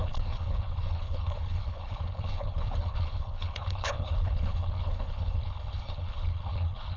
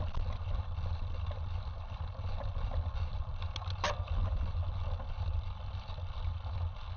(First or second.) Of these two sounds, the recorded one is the second